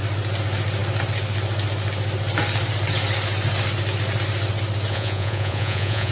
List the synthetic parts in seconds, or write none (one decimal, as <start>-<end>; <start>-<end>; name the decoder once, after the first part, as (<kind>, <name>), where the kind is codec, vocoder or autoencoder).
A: 4.9-6.1 (vocoder, Vocos)